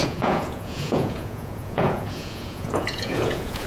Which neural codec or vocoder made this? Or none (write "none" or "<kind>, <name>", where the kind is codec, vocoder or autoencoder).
vocoder, Vocos